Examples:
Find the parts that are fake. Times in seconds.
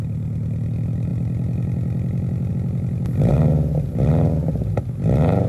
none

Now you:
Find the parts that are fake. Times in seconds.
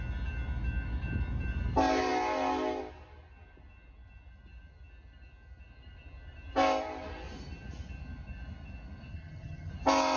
9.1-9.7 (vocoder, HiFi-GAN)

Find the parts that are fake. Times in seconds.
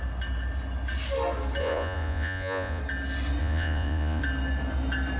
1.6-2.8 (vocoder, Vocos); 3.4-4.2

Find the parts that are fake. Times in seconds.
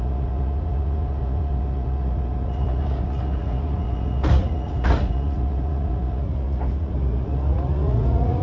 0.0-8.4 (vocoder, Vocos)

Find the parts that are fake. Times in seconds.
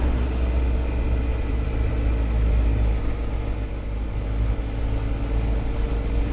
1.3-1.9 (vocoder, BigVGAN v2)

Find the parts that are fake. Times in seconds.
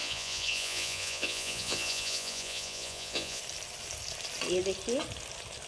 0.0-3.4 (vocoder, Vocos)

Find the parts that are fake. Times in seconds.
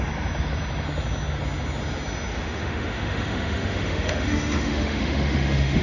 2.3-5.8 (autoencoder, DAC-VAE)